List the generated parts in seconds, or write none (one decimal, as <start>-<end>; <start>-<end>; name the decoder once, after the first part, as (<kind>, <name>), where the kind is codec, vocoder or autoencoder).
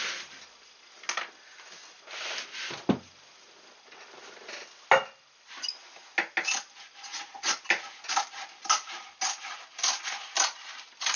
7.1-7.6 (vocoder, Vocos)